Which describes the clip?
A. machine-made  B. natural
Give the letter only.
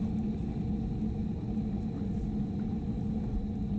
B